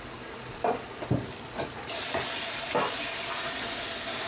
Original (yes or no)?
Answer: yes